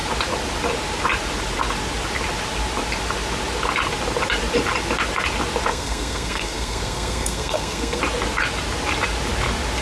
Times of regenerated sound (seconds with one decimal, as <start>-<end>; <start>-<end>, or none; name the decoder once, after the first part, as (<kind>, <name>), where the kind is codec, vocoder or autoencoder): 5.7-8.0 (codec, SNAC)